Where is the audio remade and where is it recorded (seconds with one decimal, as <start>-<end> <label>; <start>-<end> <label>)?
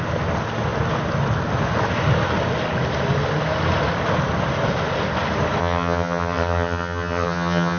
0.0-5.6 recorded; 5.6-7.8 remade